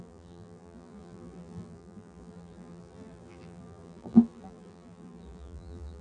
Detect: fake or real fake